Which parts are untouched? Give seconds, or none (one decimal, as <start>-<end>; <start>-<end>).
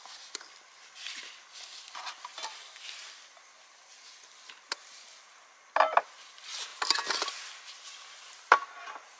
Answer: 0.0-9.2